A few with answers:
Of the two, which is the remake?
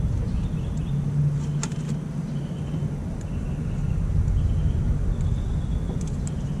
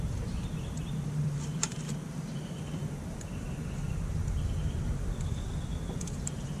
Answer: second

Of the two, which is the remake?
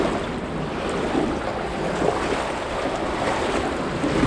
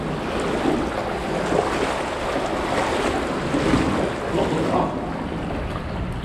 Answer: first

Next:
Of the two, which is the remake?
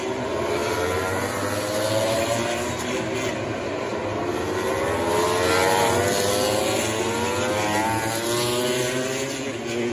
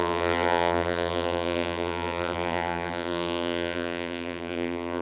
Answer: second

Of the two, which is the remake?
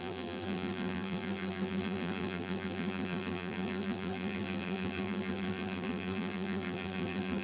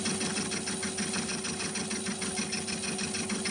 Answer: first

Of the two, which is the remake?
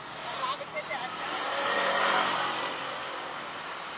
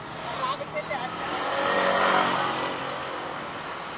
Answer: first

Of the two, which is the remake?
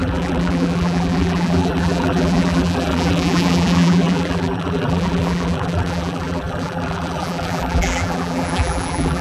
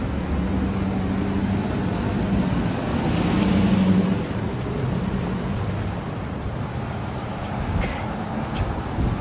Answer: first